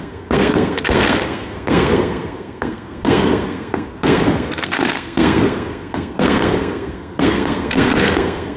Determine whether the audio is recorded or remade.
remade